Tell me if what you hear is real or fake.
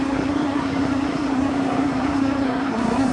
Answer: fake